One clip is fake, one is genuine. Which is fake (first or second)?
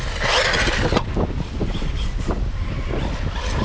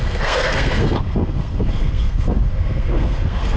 second